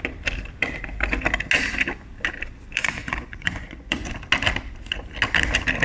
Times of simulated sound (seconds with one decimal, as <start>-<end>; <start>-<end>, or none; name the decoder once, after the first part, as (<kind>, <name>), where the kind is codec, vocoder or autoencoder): 2.8-4.1 (vocoder, Vocos)